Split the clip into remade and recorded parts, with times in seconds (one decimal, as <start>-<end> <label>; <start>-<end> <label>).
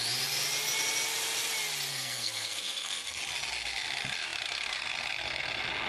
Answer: 0.0-1.9 recorded; 1.9-3.2 remade; 3.2-5.9 recorded